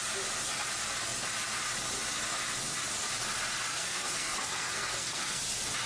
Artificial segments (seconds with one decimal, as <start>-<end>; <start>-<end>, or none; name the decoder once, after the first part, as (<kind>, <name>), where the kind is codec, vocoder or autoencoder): 3.7-5.4 (codec, SNAC)